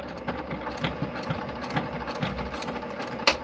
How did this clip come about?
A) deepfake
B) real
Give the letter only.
B